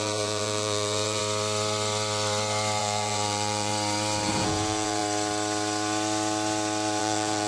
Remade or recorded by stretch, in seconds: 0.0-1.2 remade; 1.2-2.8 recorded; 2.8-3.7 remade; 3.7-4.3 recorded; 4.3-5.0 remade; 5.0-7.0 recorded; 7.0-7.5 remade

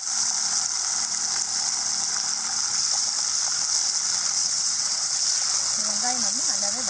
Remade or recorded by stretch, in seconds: 0.0-4.4 recorded; 4.4-5.1 remade; 5.1-6.9 recorded

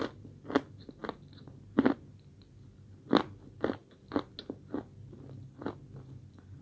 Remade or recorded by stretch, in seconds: 0.0-6.6 recorded

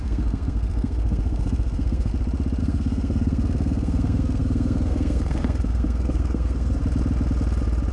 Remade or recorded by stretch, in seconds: 0.0-2.1 remade; 2.1-2.6 recorded; 2.6-6.8 remade; 6.8-7.9 recorded

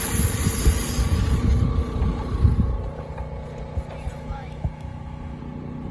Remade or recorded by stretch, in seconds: 0.0-4.1 recorded; 4.1-5.4 remade; 5.4-5.9 recorded